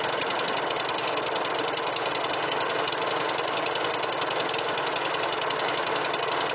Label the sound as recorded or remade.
recorded